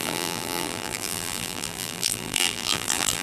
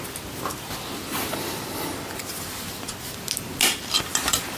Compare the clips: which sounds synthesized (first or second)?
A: first